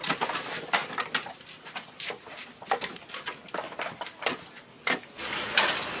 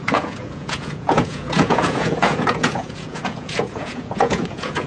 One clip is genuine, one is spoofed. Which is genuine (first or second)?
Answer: first